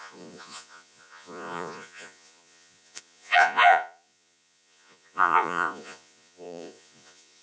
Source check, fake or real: fake